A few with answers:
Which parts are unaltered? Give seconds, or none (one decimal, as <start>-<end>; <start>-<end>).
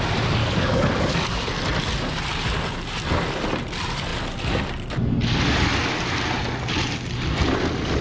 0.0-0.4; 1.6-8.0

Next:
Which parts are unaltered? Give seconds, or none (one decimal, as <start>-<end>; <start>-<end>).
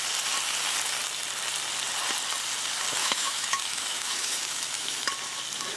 0.0-3.0; 5.1-5.8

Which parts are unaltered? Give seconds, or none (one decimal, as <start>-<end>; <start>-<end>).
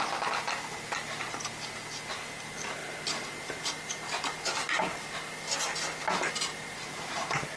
0.0-7.6